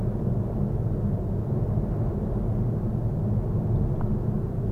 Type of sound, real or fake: real